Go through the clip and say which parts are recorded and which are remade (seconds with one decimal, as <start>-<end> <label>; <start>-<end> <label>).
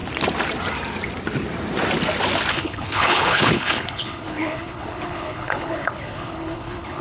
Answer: 0.0-2.5 recorded; 2.5-7.0 remade